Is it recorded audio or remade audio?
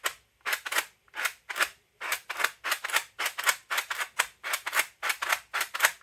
recorded